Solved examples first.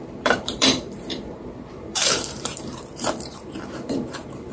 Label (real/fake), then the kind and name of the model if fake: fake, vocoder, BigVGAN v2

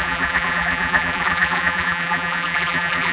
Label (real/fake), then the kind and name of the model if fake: fake, vocoder, BigVGAN v2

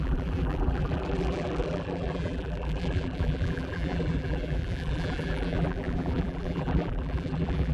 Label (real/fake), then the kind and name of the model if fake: fake, vocoder, BigVGAN v2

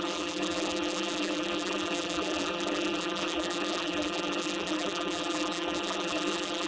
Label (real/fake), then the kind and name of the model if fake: fake, vocoder, BigVGAN v2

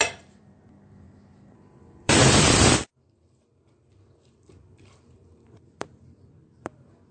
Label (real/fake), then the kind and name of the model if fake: fake, vocoder, BigVGAN v2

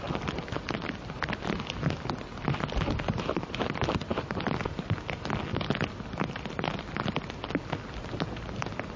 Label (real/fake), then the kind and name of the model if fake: real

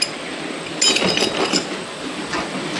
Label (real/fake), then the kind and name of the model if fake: real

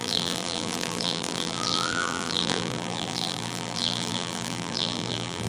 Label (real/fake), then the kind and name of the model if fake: fake, vocoder, BigVGAN v2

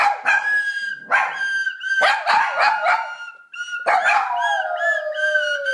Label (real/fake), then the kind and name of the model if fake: real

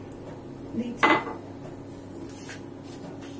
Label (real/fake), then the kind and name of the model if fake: real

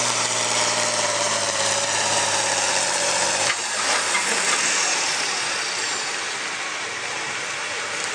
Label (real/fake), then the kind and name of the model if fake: fake, vocoder, BigVGAN v2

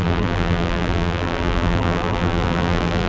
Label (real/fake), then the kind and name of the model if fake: fake, vocoder, BigVGAN v2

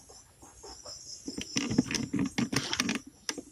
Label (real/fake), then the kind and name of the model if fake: real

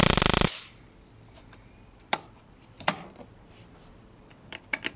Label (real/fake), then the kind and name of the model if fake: fake, vocoder, BigVGAN v2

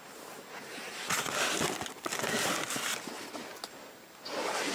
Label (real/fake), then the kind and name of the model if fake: real